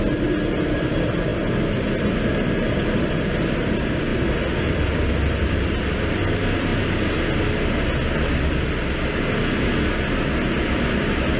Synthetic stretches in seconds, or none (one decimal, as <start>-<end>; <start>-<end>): none